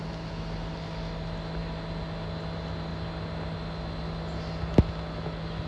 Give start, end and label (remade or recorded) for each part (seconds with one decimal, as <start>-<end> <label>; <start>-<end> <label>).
0.0-5.7 recorded